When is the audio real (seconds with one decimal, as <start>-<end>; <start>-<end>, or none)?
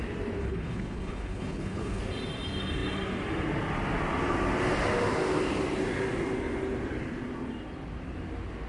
0.0-0.4; 2.0-8.7